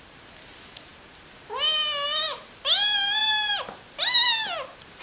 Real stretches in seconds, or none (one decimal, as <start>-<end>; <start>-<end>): 0.0-5.0